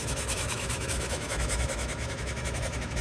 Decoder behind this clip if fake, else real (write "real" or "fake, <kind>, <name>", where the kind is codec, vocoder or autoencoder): fake, autoencoder, DAC-VAE